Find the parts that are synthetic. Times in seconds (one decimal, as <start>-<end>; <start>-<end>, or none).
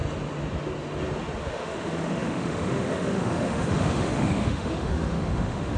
1.4-5.8